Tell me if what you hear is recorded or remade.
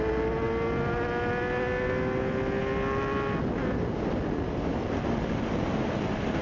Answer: recorded